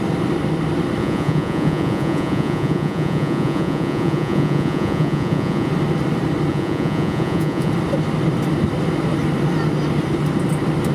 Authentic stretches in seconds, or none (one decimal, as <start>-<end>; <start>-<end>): 0.0-1.0; 5.7-6.5; 7.7-10.9